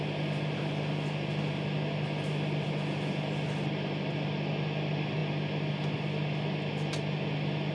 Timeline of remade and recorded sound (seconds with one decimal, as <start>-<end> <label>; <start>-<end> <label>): 0.0-7.7 recorded